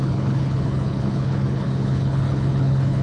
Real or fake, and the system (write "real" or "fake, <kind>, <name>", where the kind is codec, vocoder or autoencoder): fake, codec, HILCodec